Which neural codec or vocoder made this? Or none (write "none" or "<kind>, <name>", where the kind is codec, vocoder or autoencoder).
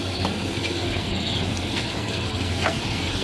codec, SNAC